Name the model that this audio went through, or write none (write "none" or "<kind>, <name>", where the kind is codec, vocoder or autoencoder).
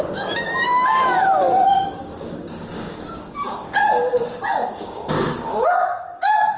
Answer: codec, DAC